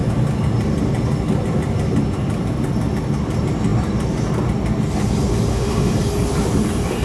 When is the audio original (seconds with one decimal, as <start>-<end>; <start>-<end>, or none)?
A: 0.0-5.5; 6.0-7.0